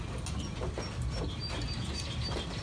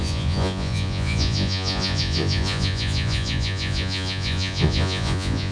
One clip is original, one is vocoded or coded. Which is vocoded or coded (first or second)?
second